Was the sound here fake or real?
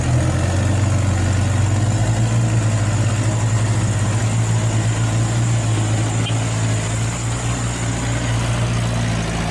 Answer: real